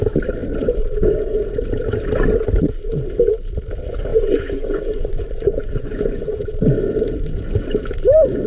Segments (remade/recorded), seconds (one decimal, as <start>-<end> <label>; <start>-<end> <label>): 0.0-4.1 recorded; 4.1-6.4 remade; 6.4-8.5 recorded